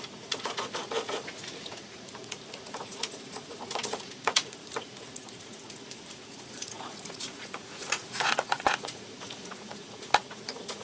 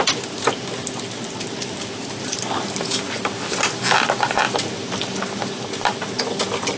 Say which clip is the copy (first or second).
first